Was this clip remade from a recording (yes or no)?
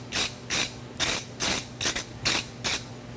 no